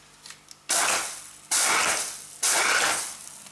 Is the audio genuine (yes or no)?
yes